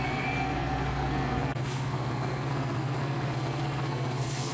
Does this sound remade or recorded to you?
remade